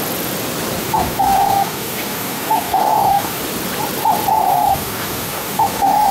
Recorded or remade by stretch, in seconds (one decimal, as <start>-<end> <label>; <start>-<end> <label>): 0.0-0.8 recorded; 0.8-3.4 remade; 3.4-4.3 recorded; 4.3-6.1 remade